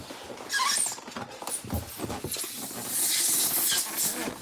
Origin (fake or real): real